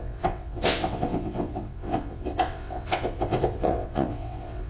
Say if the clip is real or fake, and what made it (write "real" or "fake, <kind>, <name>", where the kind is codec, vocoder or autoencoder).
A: fake, vocoder, WaveNeXt